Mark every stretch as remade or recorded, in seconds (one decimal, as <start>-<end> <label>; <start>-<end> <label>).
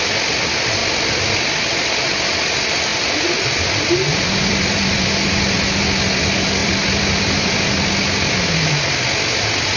0.0-9.8 recorded